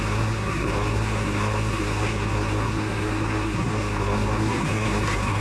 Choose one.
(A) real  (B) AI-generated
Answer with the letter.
B